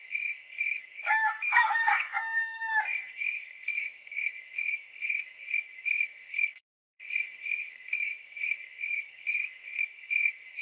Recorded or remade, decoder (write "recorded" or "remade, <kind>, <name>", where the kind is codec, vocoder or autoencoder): remade, codec, SNAC